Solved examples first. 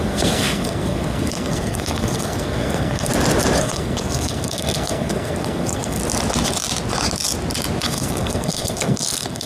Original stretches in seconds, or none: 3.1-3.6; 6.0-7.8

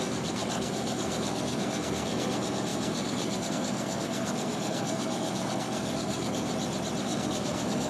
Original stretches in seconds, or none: 6.5-7.0

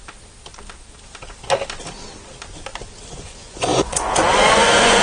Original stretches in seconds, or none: 0.0-3.0

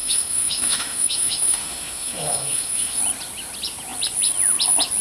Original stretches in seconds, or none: 3.0-5.0

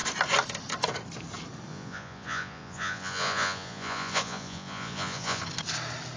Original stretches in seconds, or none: 0.0-1.7; 5.4-6.2

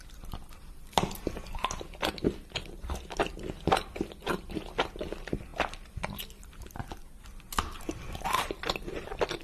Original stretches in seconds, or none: 0.0-9.4